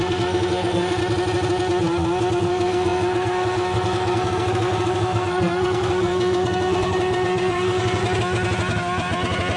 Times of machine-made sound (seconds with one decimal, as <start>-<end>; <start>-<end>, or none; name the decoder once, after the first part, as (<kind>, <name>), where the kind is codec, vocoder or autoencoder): 0.0-1.0 (codec, SNAC); 2.4-8.0